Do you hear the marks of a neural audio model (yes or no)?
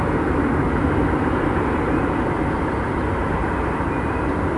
no